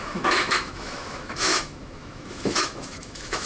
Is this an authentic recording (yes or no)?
no